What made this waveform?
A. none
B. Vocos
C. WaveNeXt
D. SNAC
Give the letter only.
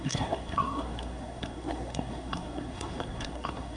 D